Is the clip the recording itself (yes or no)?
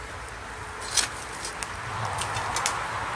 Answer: yes